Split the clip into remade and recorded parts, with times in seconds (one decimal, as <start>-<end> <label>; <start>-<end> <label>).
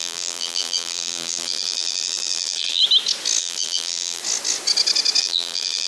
0.0-2.8 remade; 2.8-3.4 recorded; 3.4-4.2 remade; 4.2-5.2 recorded; 5.2-5.9 remade